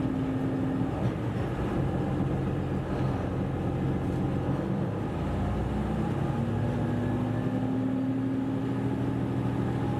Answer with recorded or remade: recorded